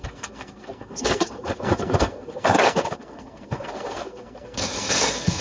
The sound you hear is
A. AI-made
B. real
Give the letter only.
A